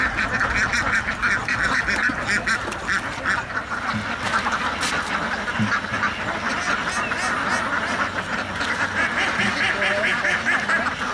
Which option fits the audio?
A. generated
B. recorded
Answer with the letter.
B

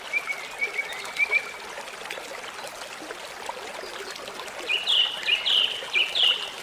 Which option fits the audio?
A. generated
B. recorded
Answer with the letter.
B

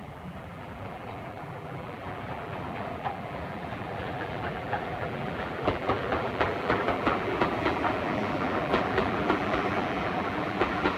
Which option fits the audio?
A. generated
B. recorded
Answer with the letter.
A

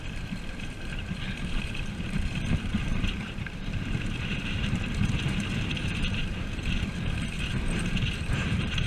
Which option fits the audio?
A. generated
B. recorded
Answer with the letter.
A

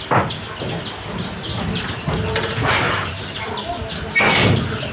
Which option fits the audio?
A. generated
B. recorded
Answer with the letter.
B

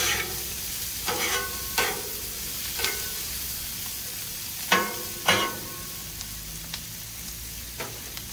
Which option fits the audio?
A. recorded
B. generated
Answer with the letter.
B